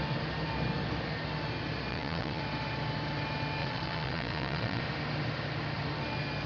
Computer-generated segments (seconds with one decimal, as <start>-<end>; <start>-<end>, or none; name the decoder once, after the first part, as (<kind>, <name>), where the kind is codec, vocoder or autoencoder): 1.9-2.4 (vocoder, Vocos); 3.6-4.8